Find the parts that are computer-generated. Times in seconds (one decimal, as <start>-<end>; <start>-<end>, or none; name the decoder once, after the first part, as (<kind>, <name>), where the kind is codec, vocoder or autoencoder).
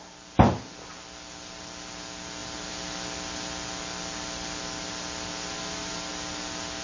none